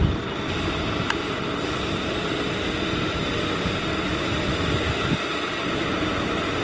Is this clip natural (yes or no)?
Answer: yes